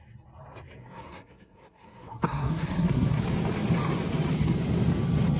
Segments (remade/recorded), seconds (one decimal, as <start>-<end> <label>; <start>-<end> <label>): 0.0-0.8 recorded; 0.8-3.2 remade; 3.2-5.4 recorded